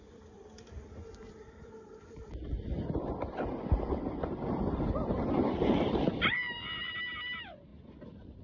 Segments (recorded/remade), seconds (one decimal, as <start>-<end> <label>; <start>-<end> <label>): 0.0-8.4 remade